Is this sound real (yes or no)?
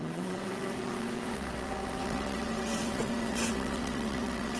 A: no